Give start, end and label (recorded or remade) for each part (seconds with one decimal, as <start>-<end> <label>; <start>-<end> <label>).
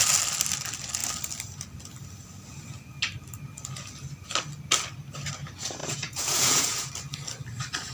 0.0-5.8 recorded; 5.8-6.9 remade; 6.9-7.9 recorded